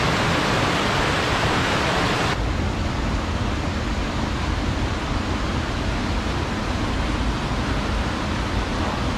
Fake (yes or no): no